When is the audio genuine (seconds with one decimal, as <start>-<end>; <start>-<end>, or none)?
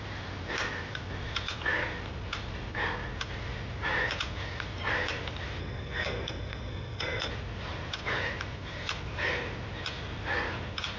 0.0-5.6; 7.3-11.0